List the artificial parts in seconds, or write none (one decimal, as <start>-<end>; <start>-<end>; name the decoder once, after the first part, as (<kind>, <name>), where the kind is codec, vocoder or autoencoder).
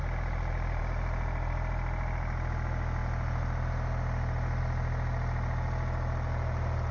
none